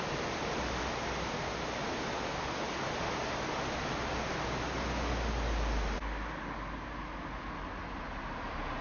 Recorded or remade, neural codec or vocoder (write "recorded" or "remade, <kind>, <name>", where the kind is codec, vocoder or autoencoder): recorded